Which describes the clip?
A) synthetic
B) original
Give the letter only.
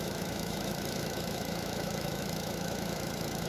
A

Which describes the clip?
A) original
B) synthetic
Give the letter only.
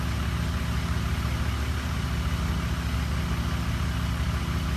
A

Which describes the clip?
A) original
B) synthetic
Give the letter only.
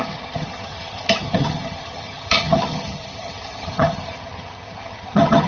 B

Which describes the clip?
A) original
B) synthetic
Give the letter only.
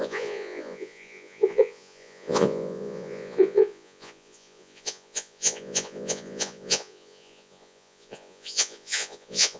B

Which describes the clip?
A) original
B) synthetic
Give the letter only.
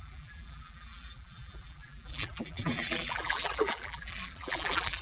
B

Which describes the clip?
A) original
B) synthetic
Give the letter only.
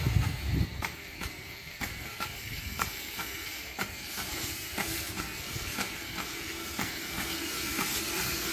B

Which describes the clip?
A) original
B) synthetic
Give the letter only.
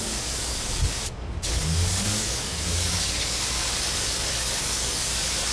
B